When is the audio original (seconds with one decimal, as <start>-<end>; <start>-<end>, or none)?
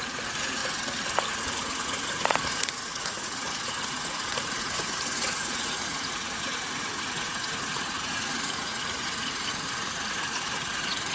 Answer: 0.6-1.3